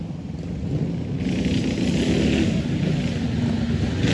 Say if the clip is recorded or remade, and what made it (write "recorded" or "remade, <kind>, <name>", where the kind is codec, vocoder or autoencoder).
recorded